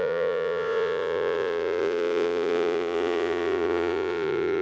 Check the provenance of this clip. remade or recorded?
remade